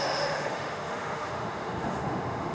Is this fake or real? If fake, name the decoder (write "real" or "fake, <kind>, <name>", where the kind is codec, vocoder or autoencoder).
fake, autoencoder, DAC-VAE